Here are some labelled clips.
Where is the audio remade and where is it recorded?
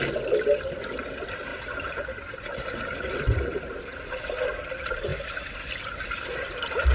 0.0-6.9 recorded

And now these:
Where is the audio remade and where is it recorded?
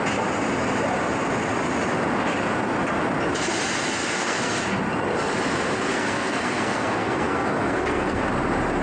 0.0-4.0 recorded; 4.0-4.6 remade; 4.6-5.9 recorded; 5.9-8.2 remade; 8.2-8.8 recorded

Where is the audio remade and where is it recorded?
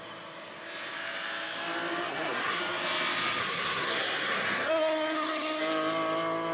0.0-2.1 recorded; 2.1-2.6 remade; 2.6-3.4 recorded; 3.4-5.6 remade; 5.6-6.5 recorded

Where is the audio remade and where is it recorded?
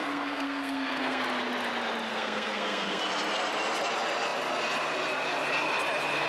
0.0-1.2 remade; 1.2-2.1 recorded; 2.1-3.0 remade; 3.0-6.3 recorded